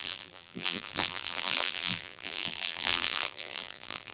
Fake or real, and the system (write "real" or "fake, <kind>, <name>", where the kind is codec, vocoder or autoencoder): fake, vocoder, BigVGAN v2